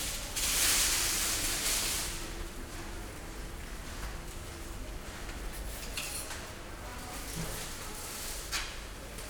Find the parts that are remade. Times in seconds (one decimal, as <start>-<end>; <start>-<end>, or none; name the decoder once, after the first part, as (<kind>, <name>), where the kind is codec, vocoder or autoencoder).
none